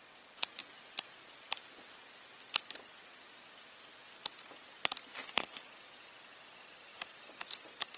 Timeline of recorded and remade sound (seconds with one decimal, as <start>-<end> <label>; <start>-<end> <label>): 0.0-8.0 recorded